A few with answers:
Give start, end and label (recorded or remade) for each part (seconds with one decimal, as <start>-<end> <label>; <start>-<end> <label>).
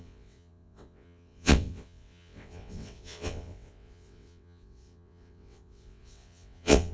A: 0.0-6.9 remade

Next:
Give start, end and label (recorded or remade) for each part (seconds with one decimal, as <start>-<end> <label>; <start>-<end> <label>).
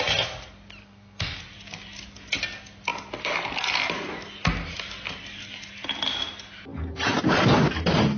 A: 0.0-0.8 recorded; 0.8-1.4 remade; 1.4-8.2 recorded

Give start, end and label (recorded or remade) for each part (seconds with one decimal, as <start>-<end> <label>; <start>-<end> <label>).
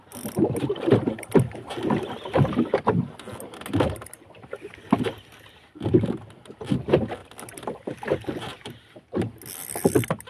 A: 0.0-10.3 recorded